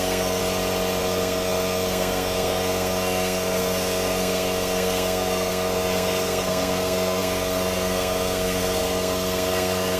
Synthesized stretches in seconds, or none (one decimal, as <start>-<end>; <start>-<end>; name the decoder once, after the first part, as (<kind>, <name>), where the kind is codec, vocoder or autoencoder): 0.0-0.4 (codec, SNAC); 1.0-10.0